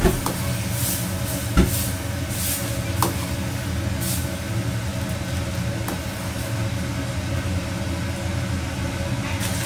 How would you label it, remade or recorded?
recorded